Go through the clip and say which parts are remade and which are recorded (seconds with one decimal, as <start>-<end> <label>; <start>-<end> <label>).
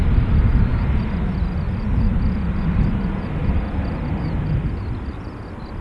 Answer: 0.0-5.8 recorded